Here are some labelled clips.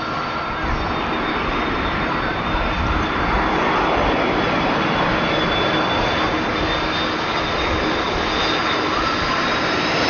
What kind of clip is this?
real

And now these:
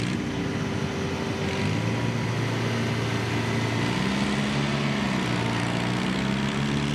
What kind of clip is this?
real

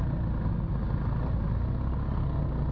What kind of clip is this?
real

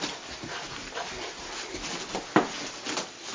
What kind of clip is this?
real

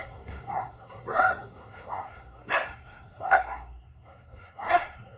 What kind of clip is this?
fake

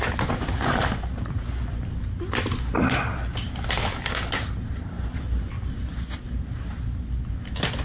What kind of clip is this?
real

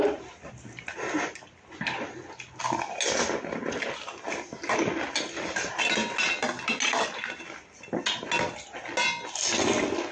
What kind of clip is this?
real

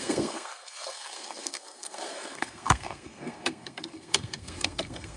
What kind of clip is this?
fake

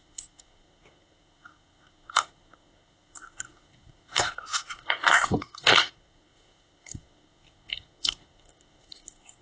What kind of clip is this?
fake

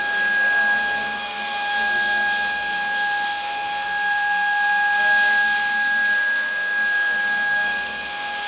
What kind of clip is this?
fake